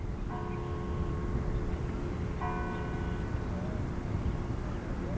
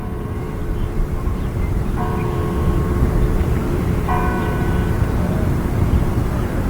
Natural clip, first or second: first